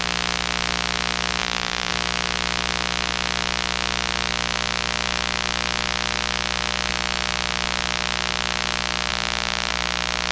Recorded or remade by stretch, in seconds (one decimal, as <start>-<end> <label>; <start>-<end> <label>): 0.0-1.4 recorded; 1.4-1.9 remade; 1.9-10.3 recorded